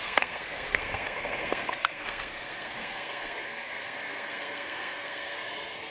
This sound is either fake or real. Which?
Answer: fake